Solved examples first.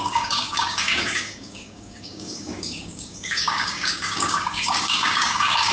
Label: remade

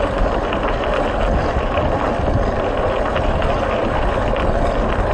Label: recorded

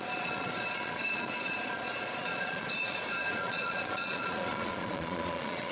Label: remade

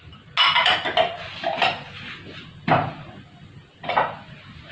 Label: recorded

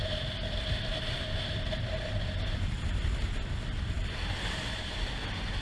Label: recorded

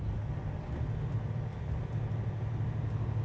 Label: recorded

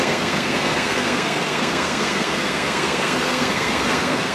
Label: remade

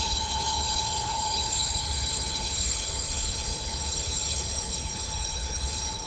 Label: remade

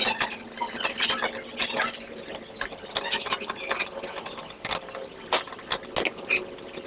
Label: recorded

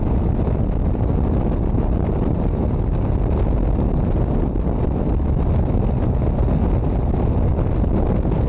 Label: recorded